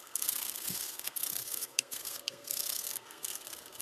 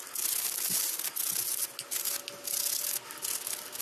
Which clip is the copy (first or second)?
first